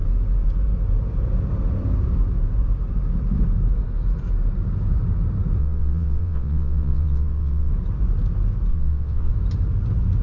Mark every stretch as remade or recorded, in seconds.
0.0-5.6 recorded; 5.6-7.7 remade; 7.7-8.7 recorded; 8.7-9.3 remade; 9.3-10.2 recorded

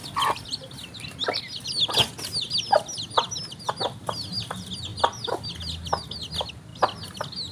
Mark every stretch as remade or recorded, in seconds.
0.0-7.5 recorded

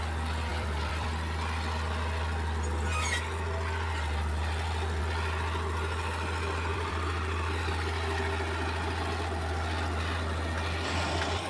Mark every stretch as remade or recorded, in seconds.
0.0-0.5 recorded; 0.5-1.1 remade; 1.1-6.7 recorded; 6.7-7.7 remade; 7.7-11.5 recorded

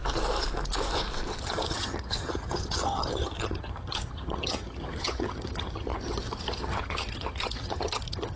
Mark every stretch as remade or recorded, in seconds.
0.0-1.4 recorded; 1.4-8.4 remade

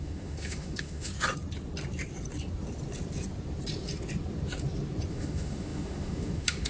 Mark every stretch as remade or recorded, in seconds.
0.0-1.1 remade; 1.1-5.1 recorded; 5.1-6.7 remade

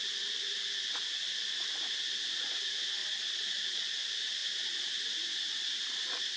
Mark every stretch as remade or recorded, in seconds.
0.0-3.0 recorded; 3.0-3.9 remade; 3.9-6.4 recorded

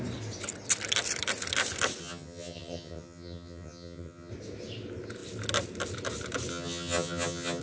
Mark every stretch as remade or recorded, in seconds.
0.0-2.0 recorded; 2.0-4.3 remade; 4.3-6.5 recorded; 6.5-7.6 remade

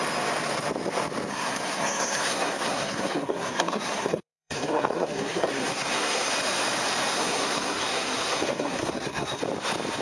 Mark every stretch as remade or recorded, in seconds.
0.0-1.3 recorded; 1.3-6.3 remade; 6.3-7.1 recorded; 7.1-9.4 remade; 9.4-10.0 recorded